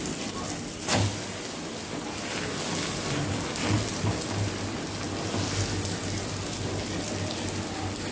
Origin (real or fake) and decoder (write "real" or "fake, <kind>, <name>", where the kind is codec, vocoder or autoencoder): real